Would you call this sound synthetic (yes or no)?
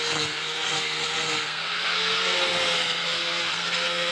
yes